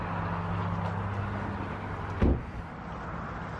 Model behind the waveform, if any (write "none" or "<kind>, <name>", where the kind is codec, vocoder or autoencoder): none